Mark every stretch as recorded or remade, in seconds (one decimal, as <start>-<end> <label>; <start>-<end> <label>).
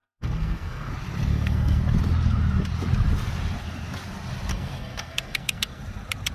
0.0-0.9 remade; 0.9-1.3 recorded; 1.3-1.8 remade; 1.8-4.5 recorded; 4.5-5.8 remade; 5.8-6.3 recorded